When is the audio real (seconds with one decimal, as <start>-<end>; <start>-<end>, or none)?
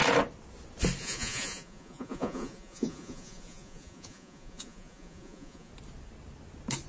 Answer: 0.0-1.0; 5.7-6.9